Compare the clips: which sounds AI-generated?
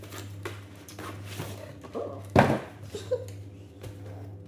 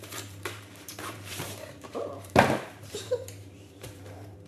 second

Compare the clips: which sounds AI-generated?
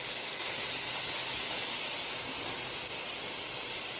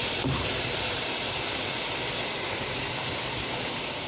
second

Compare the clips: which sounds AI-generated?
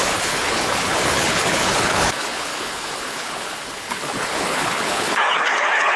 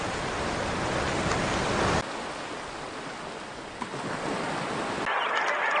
first